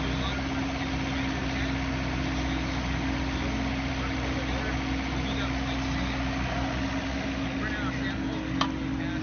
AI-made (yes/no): no